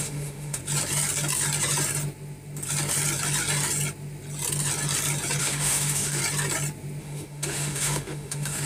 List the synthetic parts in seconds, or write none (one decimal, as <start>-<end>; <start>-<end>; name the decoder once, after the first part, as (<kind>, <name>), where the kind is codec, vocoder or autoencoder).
0.0-0.6 (autoencoder, DAC-VAE); 5.4-6.2; 7.0-8.7